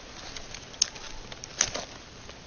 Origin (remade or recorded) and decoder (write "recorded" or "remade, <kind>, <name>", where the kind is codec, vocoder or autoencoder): recorded